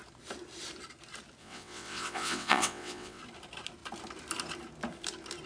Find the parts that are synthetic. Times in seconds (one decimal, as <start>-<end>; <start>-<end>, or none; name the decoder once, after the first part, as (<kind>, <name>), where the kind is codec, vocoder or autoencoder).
1.4-3.2 (vocoder, WaveNeXt)